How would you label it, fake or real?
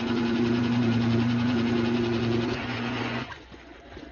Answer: fake